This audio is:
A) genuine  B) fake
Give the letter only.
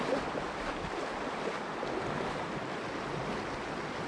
A